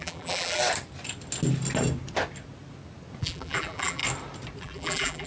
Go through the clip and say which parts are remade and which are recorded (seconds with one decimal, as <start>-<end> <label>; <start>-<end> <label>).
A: 0.0-0.6 remade; 0.6-3.2 recorded; 3.2-4.0 remade; 4.0-4.6 recorded; 4.6-5.3 remade